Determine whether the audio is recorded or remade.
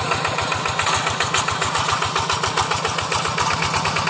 recorded